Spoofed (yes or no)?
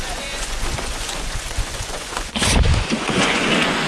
yes